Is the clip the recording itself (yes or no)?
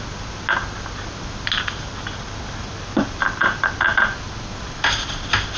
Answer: yes